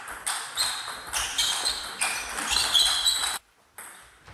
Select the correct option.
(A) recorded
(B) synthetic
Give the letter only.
A